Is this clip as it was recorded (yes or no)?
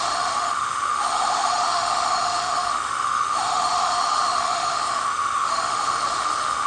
no